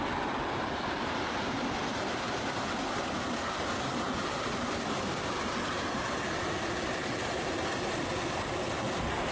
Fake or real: real